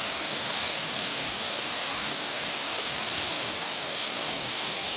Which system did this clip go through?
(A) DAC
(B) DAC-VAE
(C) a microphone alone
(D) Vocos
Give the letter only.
A